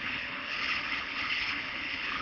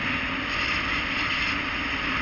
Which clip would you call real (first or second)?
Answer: second